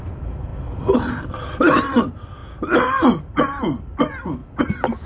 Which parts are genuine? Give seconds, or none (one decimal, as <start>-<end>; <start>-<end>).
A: 0.0-5.1